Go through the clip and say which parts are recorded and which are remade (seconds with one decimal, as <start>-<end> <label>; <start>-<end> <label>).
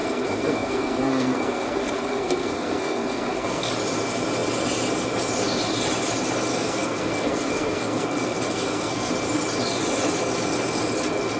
0.0-3.7 remade; 3.7-6.5 recorded; 6.5-9.1 remade; 9.1-11.4 recorded